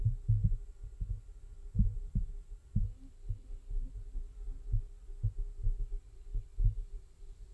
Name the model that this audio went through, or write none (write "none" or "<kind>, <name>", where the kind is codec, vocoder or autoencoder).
none